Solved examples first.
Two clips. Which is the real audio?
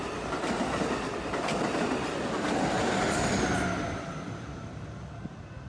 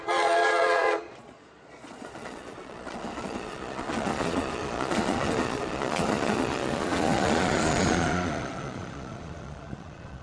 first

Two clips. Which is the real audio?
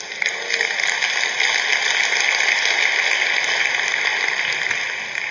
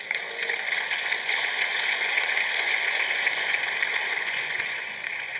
first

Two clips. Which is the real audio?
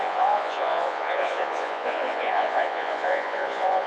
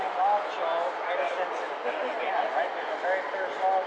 second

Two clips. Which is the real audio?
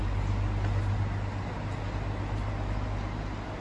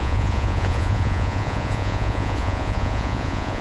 first